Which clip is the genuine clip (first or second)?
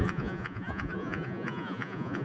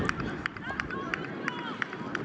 second